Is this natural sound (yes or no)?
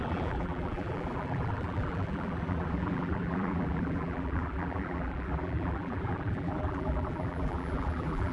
no